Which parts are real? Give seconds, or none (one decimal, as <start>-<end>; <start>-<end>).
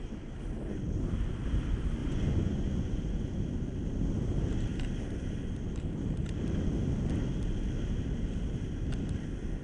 0.0-2.0; 3.3-9.6